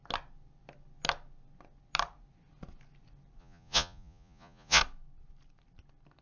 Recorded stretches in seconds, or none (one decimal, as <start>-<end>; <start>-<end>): 0.0-3.4; 4.8-6.2